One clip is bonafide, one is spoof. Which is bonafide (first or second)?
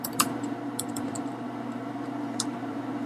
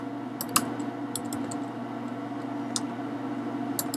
second